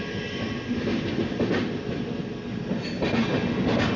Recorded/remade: recorded